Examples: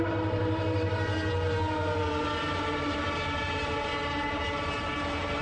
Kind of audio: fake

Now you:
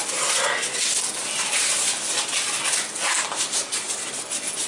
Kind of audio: real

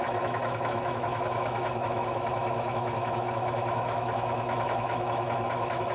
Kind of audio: fake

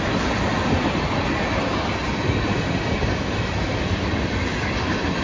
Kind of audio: real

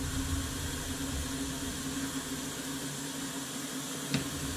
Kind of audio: real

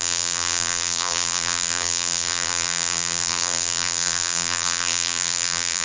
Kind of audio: fake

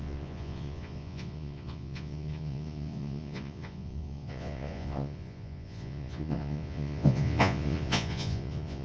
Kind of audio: fake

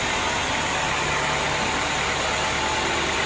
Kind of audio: real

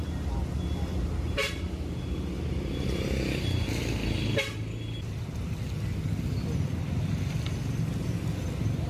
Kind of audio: real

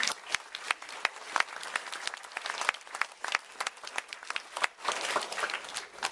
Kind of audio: real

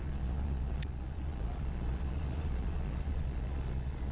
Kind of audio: fake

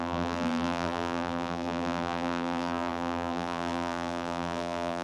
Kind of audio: fake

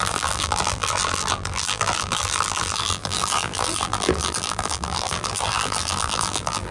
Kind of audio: fake